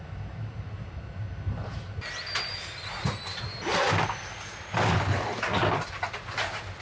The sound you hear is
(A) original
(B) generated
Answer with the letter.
A